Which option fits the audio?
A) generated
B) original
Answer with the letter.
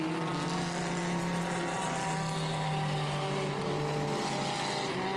B